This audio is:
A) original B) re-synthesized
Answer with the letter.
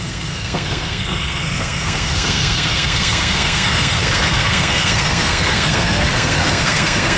B